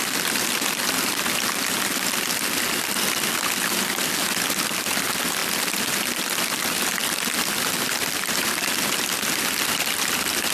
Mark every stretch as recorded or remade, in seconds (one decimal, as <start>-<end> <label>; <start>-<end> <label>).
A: 0.0-10.5 recorded